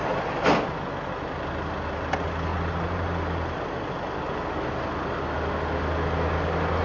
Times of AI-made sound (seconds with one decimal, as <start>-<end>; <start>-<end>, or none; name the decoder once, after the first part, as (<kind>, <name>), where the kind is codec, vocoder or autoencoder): none